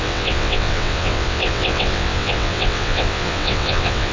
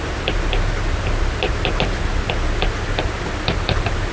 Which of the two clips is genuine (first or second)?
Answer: second